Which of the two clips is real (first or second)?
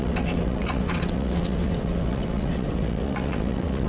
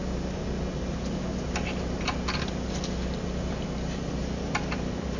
second